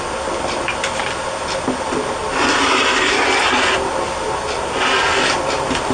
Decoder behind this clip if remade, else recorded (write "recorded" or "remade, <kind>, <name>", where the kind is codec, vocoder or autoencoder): recorded